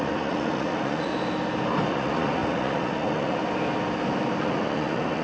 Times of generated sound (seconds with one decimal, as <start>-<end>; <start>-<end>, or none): 0.0-1.1; 1.9-3.4; 4.4-5.2